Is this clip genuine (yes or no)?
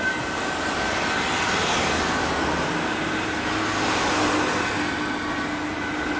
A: yes